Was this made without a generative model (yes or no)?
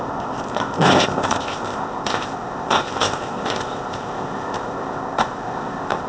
no